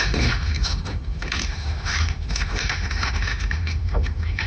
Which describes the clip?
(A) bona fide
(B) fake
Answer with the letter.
B